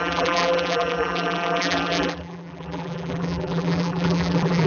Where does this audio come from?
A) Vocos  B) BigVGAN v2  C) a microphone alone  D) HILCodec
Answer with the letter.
B